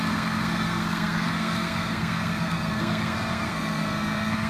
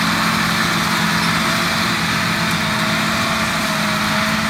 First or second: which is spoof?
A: first